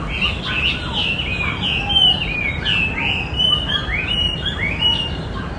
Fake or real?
real